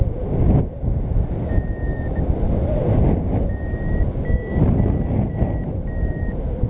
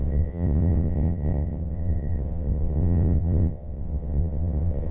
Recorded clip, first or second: first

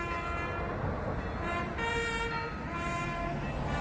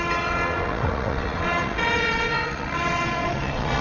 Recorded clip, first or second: first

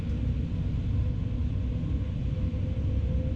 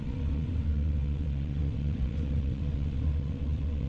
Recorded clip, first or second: first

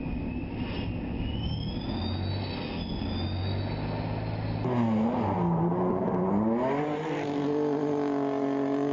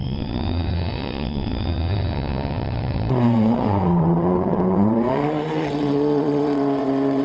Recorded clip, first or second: first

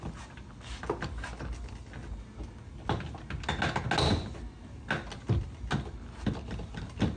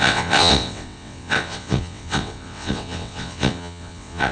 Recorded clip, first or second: first